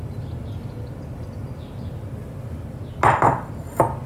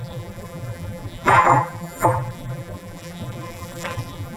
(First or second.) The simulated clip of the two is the second